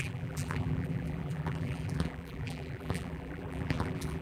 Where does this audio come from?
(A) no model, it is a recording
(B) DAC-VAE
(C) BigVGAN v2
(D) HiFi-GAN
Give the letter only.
C